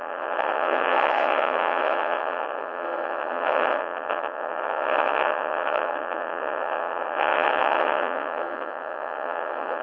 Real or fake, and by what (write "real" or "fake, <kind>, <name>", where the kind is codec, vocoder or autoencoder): fake, vocoder, WaveNeXt